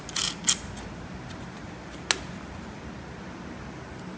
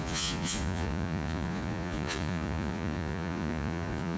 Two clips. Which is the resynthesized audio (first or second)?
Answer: second